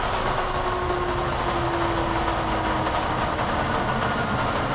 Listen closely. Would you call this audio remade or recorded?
recorded